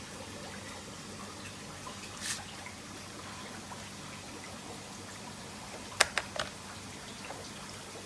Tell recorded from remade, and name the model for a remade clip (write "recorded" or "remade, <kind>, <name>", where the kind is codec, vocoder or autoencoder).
recorded